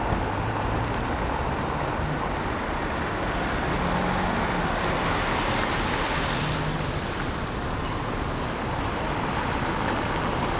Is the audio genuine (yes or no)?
yes